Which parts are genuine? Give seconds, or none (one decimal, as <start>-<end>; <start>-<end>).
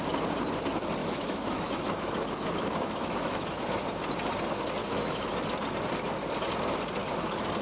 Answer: 0.0-1.0; 3.6-4.8; 5.3-7.6